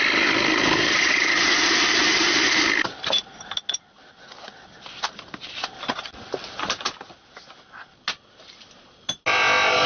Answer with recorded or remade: recorded